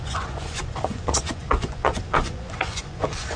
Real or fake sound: fake